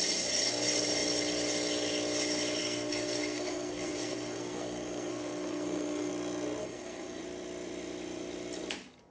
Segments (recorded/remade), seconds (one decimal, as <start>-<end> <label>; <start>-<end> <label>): 0.0-2.6 recorded; 2.6-6.1 remade; 6.1-6.6 recorded; 6.6-7.2 remade; 7.2-9.1 recorded